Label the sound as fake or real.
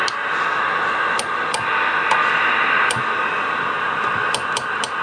real